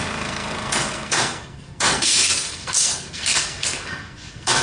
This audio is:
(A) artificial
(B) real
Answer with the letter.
A